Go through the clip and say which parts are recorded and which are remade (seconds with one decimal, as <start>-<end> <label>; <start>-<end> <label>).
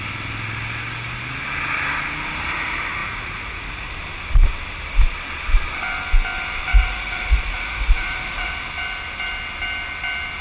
0.0-3.0 recorded; 3.0-3.9 remade; 3.9-6.7 recorded; 6.7-8.5 remade; 8.5-10.4 recorded